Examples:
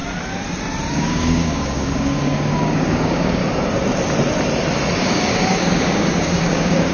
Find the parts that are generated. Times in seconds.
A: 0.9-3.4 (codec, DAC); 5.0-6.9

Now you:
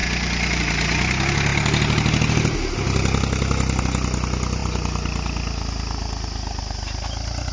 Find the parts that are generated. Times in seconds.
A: none

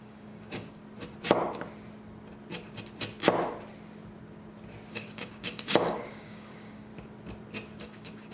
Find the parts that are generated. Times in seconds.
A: 0.0-0.8 (codec, DAC); 4.9-6.9; 7.8-8.3

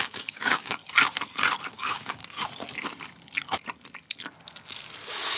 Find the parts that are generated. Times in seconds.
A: 0.0-0.8 (codec, DAC); 1.7-2.2

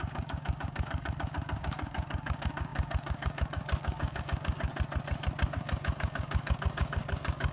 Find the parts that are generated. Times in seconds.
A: 0.0-4.7 (codec, DAC); 5.5-7.5

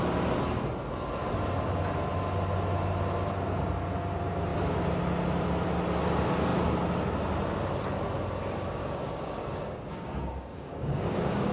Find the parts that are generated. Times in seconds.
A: 8.8-11.5 (codec, DAC)